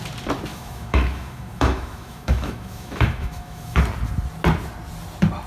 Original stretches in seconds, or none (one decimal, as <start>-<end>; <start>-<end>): 0.0-0.5; 3.8-5.5